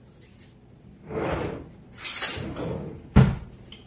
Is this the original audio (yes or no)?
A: yes